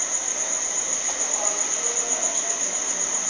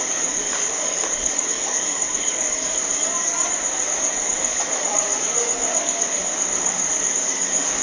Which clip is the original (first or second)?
first